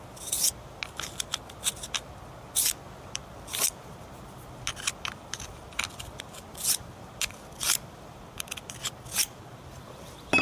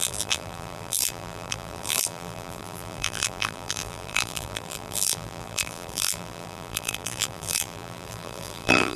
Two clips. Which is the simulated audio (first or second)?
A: second